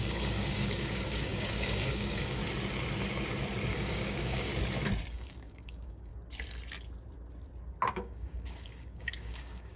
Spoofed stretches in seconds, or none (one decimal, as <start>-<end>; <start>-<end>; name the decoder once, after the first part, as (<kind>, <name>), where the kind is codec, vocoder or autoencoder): 0.0-2.4 (codec, DAC); 3.7-4.5; 5.1-6.1; 7.9-9.8